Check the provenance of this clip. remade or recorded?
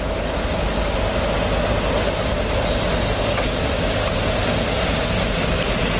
recorded